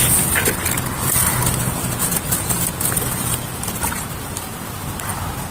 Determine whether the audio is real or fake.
real